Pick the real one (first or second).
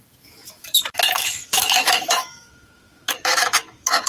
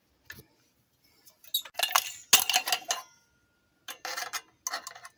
second